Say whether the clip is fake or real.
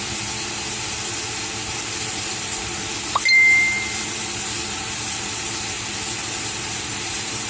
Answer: fake